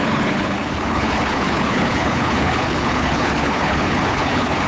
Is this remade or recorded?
remade